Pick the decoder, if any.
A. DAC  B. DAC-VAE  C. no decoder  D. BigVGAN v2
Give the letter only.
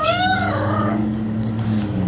A